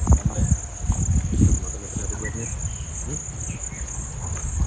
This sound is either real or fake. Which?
real